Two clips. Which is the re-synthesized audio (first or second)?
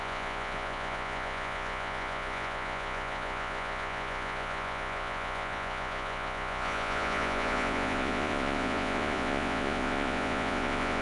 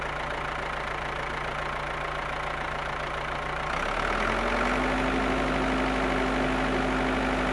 first